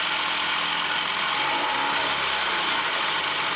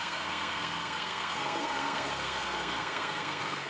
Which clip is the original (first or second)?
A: first